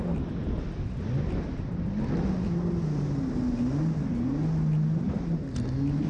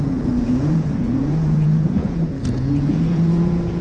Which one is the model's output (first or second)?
second